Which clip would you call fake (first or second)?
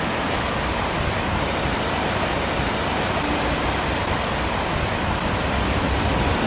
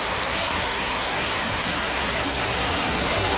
second